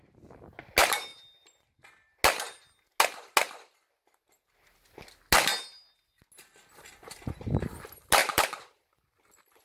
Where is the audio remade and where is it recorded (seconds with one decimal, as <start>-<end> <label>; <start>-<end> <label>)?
0.0-8.2 recorded; 8.2-8.8 remade; 8.8-9.6 recorded